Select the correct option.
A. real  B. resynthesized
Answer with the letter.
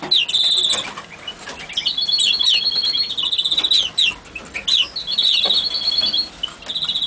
A